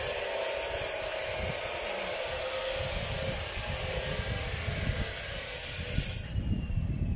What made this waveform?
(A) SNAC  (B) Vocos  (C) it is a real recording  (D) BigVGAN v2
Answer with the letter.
C